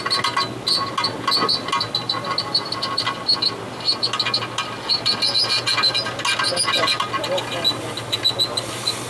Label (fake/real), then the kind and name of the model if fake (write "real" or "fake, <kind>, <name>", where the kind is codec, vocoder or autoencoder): real